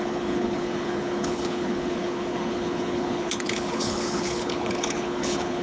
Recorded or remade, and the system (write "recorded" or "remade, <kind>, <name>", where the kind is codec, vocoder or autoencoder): remade, codec, HILCodec